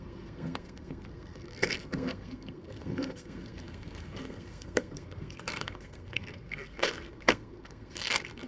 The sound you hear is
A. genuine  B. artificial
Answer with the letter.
B